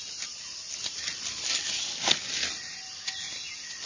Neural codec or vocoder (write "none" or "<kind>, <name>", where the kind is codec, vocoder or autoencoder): none